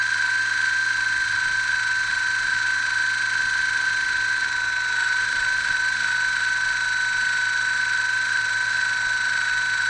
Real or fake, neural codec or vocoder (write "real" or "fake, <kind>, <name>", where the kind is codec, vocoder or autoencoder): real